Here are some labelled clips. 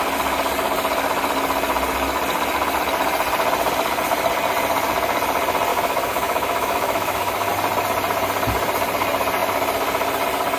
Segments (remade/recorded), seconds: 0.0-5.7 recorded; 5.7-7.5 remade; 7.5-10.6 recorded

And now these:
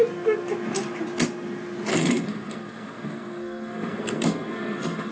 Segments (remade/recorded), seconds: 0.0-1.9 recorded; 1.9-5.1 remade

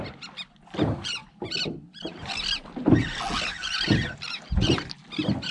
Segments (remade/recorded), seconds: 0.0-5.5 recorded